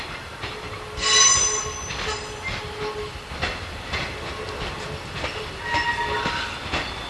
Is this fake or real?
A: real